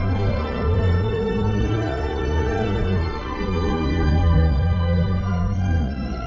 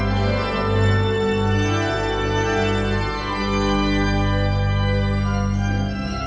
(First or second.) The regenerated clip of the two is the first